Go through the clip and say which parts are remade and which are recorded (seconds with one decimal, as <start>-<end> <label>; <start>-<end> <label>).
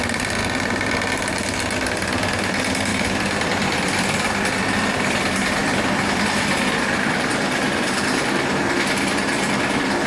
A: 0.0-2.9 recorded; 2.9-4.5 remade; 4.5-5.6 recorded; 5.6-8.6 remade; 8.6-10.1 recorded